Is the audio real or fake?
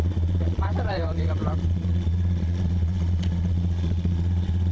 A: fake